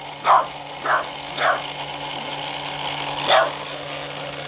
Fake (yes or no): no